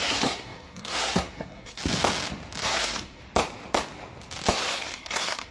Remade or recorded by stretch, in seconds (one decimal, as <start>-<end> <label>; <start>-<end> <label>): 0.0-1.8 remade; 1.8-2.6 recorded; 2.6-3.2 remade; 3.2-4.5 recorded; 4.5-5.5 remade